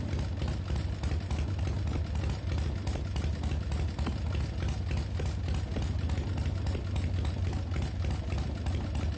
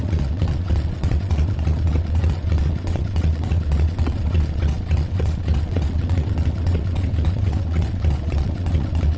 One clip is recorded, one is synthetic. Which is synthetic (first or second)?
second